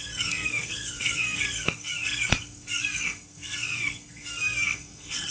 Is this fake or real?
fake